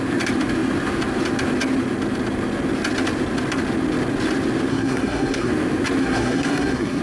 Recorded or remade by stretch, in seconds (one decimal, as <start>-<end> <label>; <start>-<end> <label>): 0.0-4.7 recorded; 4.7-5.5 remade; 5.5-6.0 recorded; 6.0-7.0 remade